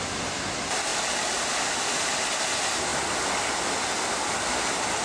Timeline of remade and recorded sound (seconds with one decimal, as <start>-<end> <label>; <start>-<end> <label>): 0.0-5.0 recorded